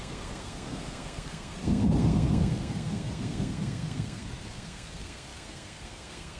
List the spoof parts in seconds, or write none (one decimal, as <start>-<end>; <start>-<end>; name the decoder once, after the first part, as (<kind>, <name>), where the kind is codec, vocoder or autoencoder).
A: 0.0-6.4 (codec, SNAC)